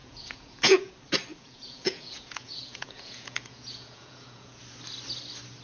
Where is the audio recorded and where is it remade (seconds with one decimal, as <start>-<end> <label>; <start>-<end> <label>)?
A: 0.0-0.9 remade; 0.9-1.3 recorded; 1.3-4.6 remade; 4.6-5.6 recorded